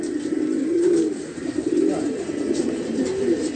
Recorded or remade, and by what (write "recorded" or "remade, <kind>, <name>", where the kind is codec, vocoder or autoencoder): remade, vocoder, BigVGAN v2